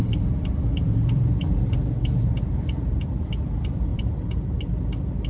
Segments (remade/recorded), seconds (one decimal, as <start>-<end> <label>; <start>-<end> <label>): 0.0-3.2 remade; 3.2-3.9 recorded; 3.9-4.5 remade; 4.5-5.3 recorded